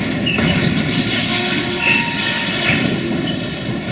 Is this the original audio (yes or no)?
yes